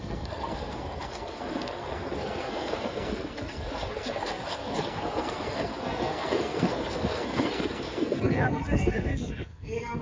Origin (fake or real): fake